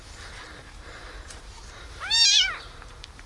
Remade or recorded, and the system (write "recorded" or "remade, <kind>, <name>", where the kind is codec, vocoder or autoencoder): remade, vocoder, BigVGAN v2